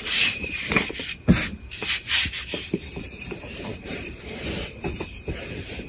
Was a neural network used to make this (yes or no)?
yes